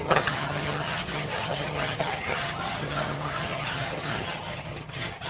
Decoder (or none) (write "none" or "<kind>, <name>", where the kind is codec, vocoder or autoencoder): vocoder, HiFi-GAN